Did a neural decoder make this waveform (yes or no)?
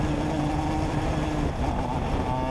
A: no